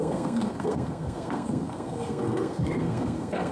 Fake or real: fake